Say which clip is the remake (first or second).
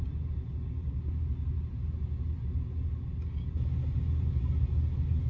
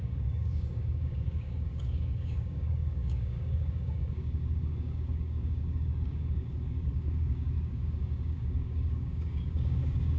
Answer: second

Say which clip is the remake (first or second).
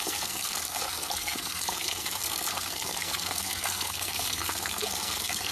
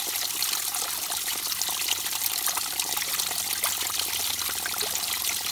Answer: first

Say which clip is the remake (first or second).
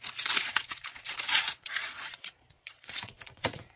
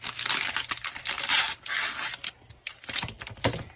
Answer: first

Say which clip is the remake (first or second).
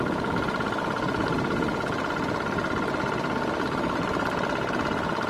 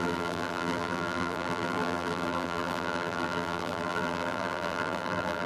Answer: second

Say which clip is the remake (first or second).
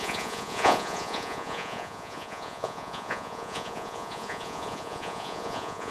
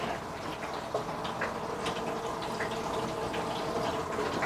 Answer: first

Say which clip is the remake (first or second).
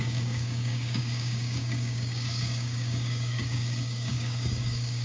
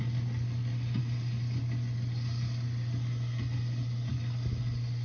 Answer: first